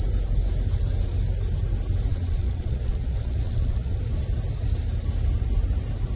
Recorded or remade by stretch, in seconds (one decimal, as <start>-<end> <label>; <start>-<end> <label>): 0.0-2.1 recorded; 2.1-4.0 remade; 4.0-6.2 recorded